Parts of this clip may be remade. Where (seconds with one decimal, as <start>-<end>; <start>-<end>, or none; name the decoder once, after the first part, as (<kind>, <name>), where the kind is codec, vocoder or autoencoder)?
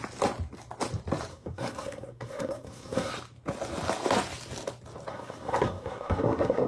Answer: 1.3-3.1 (codec, SNAC); 5.1-6.7